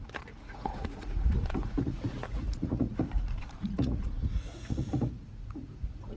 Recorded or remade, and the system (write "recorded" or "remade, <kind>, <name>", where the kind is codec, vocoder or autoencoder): remade, vocoder, Vocos